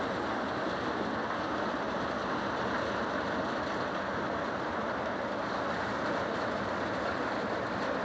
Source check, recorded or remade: recorded